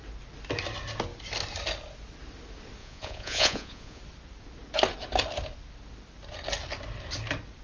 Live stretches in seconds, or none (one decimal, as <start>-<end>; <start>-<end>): 0.0-2.8; 4.0-7.6